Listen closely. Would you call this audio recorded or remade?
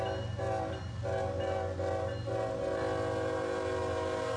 recorded